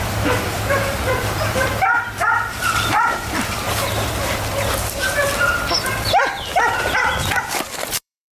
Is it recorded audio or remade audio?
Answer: remade